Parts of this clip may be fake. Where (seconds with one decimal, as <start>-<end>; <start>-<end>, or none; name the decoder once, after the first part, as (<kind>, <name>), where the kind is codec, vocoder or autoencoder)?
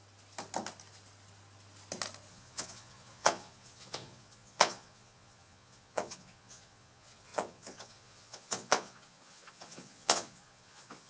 2.3-11.1 (vocoder, Vocos)